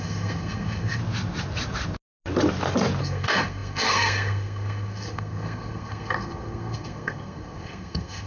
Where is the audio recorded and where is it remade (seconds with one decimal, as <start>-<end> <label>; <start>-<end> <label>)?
0.0-1.0 remade; 1.0-3.0 recorded; 3.0-8.3 remade